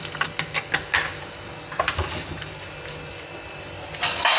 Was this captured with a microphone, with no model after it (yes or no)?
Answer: yes